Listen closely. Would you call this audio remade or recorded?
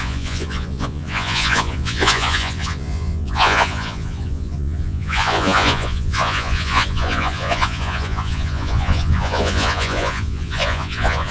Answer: remade